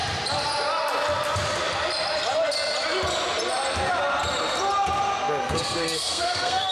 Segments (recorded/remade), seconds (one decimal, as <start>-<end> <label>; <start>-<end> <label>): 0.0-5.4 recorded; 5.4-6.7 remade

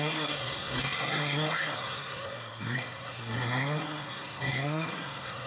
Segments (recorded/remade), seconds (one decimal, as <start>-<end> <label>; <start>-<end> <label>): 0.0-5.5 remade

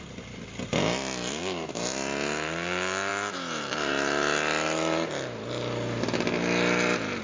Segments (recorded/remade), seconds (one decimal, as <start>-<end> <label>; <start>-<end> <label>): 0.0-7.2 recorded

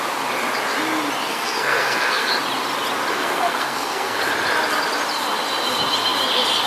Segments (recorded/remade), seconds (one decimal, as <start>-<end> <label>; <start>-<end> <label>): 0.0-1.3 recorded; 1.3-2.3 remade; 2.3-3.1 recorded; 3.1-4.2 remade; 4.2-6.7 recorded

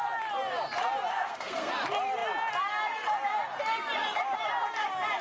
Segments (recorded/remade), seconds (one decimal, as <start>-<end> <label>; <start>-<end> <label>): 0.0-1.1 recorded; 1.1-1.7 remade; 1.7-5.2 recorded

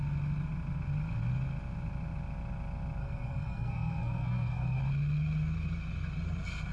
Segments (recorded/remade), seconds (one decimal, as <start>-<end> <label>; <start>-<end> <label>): 0.0-3.0 recorded; 3.0-4.8 remade; 4.8-6.7 recorded